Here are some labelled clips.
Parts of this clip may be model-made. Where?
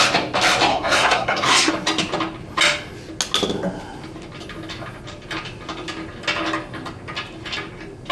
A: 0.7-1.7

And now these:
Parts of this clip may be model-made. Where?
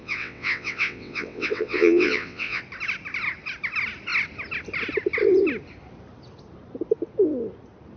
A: 0.0-2.6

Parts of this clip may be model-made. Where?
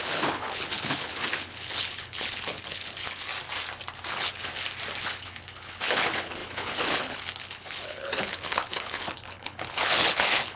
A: 0.0-3.3; 4.1-4.5; 5.0-10.6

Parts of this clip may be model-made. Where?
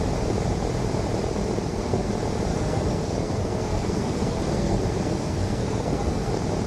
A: 1.6-2.1; 2.5-6.3